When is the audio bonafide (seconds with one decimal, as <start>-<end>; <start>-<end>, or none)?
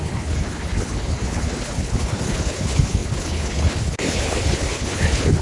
none